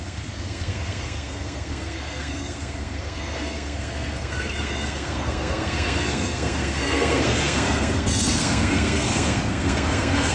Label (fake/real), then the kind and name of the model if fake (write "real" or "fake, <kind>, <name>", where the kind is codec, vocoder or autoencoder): fake, codec, SNAC